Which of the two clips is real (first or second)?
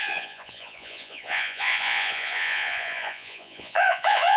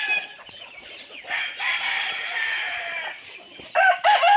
second